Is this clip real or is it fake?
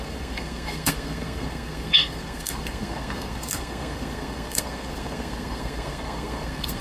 fake